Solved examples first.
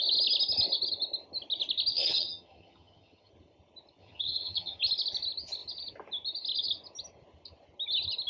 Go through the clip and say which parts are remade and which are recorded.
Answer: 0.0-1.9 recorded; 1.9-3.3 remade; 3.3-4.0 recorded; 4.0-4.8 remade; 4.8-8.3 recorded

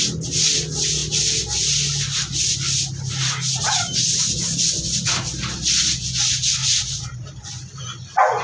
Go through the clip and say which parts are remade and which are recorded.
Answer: 0.0-6.6 recorded; 6.6-7.2 remade; 7.2-8.4 recorded

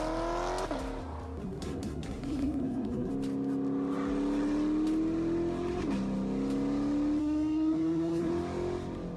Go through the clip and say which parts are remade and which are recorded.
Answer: 0.0-1.4 recorded; 1.4-3.1 remade; 3.1-7.2 recorded; 7.2-8.3 remade; 8.3-9.2 recorded

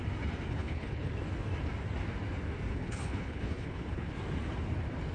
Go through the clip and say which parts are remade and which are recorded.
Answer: 0.0-0.5 recorded; 0.5-1.1 remade; 1.1-2.7 recorded; 2.7-4.1 remade; 4.1-5.1 recorded

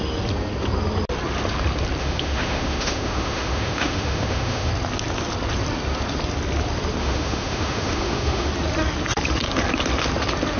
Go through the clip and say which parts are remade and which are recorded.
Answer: 0.0-2.0 recorded; 2.0-4.7 remade; 4.7-7.0 recorded; 7.0-8.5 remade; 8.5-10.6 recorded

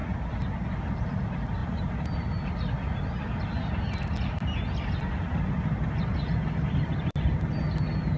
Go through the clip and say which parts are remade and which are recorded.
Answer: 0.0-8.2 recorded

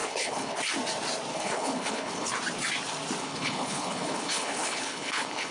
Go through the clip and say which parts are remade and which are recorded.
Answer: 0.0-0.6 remade; 0.6-1.3 recorded; 1.3-2.3 remade; 2.3-3.2 recorded; 3.2-5.5 remade